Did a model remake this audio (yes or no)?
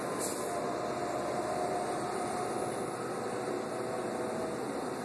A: no